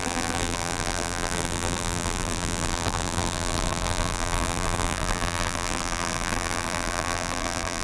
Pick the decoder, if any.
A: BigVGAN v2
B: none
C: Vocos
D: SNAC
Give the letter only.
A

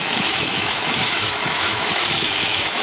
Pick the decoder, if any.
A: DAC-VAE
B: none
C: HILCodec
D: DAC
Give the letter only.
A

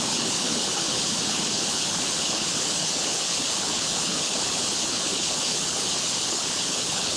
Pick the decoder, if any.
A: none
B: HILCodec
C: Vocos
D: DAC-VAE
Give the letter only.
B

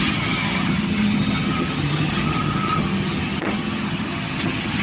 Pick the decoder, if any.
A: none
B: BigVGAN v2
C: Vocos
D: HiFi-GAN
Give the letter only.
D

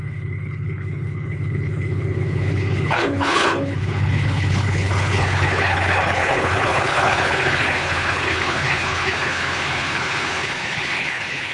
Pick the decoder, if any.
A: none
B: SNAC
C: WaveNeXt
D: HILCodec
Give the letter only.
D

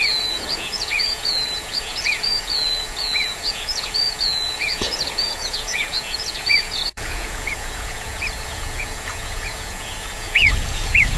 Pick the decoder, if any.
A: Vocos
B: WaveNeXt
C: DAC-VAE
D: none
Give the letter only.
A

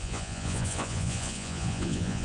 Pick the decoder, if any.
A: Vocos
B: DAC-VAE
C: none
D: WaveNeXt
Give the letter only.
A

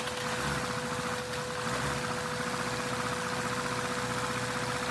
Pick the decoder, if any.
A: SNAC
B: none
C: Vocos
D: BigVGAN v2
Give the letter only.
B